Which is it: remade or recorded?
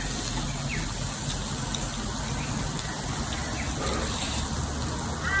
recorded